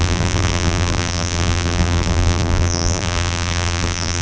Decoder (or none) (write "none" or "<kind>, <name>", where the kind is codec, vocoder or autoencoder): vocoder, BigVGAN v2